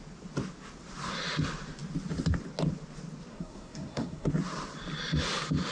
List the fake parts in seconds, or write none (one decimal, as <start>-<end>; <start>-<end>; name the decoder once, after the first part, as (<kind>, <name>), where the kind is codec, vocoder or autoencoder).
3.3-4.3 (codec, SNAC)